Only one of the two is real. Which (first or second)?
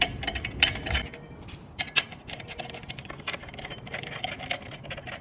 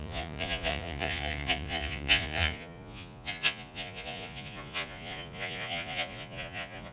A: first